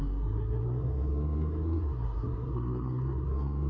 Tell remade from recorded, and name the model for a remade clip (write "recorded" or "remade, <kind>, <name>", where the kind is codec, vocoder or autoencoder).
remade, codec, SNAC